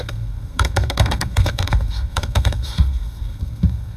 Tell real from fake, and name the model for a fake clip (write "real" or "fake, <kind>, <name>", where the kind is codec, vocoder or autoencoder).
fake, codec, SNAC